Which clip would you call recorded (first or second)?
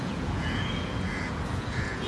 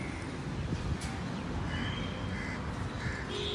second